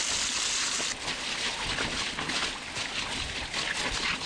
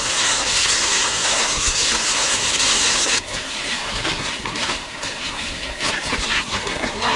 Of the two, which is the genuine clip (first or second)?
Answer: first